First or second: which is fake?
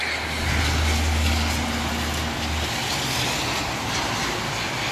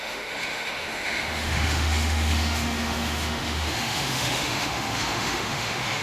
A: second